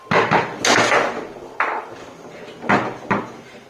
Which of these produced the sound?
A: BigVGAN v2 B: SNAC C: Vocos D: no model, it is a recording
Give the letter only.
D